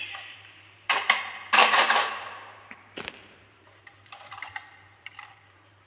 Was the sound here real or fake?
fake